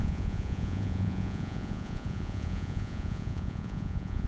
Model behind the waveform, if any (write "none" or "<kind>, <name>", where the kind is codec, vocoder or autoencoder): vocoder, Vocos